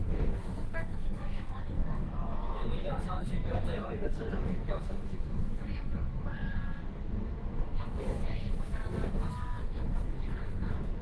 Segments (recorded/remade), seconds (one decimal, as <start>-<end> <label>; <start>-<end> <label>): 0.0-11.0 remade